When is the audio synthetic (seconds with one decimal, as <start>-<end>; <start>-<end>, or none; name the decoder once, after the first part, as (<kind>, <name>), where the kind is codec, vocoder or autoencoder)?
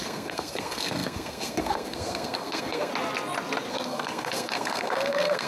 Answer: 0.0-2.9 (codec, SNAC); 3.7-5.5